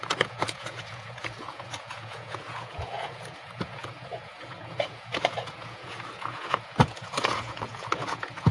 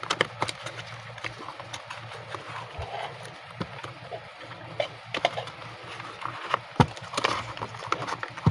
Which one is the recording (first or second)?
second